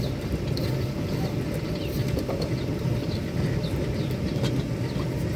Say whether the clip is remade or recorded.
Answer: recorded